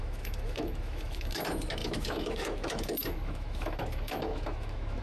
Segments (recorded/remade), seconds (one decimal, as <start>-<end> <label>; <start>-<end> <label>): 0.0-5.0 remade